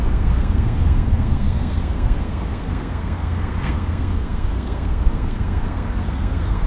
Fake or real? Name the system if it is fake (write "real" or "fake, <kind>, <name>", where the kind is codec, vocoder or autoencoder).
fake, codec, SNAC